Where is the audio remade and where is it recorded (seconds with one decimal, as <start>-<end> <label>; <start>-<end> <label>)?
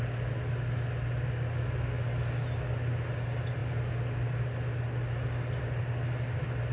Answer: 0.0-6.7 recorded